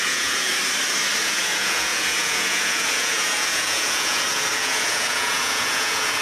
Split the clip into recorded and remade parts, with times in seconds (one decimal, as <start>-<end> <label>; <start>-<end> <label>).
0.0-0.5 remade; 0.5-1.2 recorded; 1.2-6.2 remade